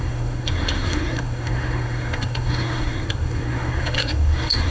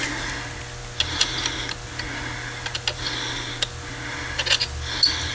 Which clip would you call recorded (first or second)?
second